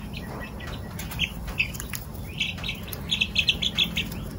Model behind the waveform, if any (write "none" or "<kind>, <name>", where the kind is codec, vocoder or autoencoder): none